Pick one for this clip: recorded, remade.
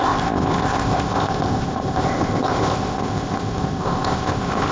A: remade